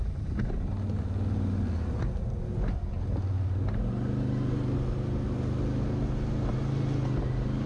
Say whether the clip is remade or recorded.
recorded